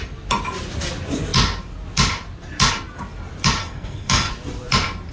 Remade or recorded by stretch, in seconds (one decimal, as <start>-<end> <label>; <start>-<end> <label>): 0.0-3.6 recorded; 3.6-4.3 remade; 4.3-5.1 recorded